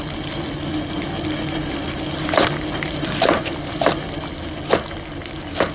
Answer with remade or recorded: recorded